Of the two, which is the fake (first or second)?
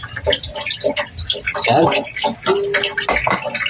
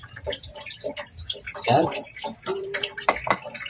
second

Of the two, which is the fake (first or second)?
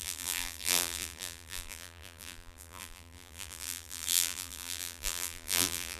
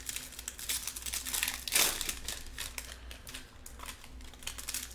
first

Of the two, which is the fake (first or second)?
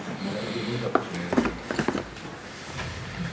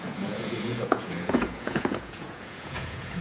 second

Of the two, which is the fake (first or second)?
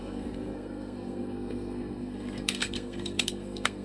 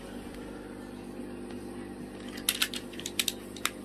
first